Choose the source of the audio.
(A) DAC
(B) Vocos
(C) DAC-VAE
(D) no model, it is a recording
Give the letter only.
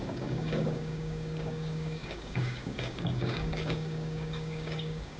A